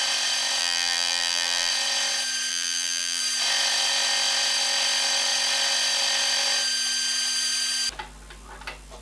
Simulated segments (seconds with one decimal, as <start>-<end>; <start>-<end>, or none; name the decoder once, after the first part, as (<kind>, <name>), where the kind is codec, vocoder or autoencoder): 0.6-1.7 (vocoder, BigVGAN v2); 2.5-3.2